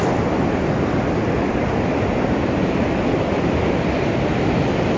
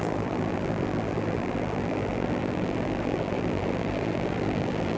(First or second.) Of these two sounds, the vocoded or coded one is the second